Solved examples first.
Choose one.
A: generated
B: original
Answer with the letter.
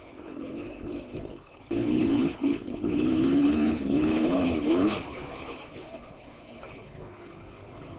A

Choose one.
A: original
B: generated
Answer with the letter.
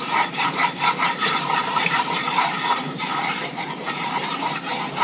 B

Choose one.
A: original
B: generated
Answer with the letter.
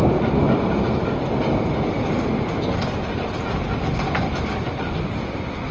A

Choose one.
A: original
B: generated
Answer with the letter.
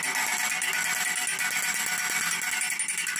A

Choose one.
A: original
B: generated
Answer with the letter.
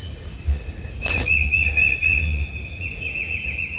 B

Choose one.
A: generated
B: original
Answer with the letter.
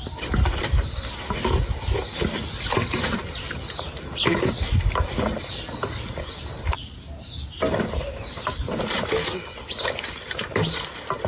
B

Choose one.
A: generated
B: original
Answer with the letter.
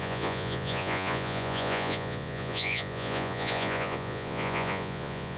A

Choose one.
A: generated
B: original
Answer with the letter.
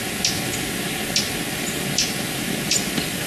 B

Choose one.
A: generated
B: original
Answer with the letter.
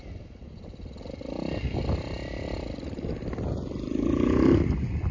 B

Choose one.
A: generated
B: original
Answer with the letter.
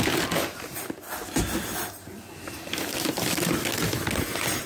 B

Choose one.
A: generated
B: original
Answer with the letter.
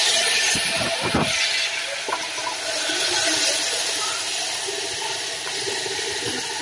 B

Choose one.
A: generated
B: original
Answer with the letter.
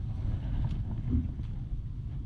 B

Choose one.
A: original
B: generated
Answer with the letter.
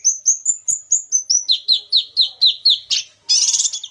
A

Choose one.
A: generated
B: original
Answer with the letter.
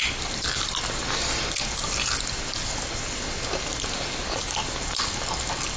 B